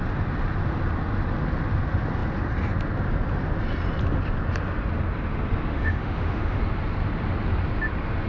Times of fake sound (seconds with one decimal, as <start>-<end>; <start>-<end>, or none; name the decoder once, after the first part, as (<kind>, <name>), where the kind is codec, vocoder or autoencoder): 5.7-6.6 (autoencoder, DAC-VAE)